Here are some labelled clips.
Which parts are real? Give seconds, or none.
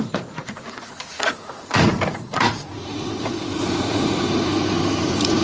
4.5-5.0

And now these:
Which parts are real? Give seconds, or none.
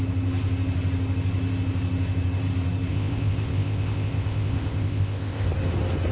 0.0-2.9; 5.5-6.1